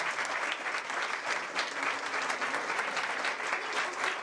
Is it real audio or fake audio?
real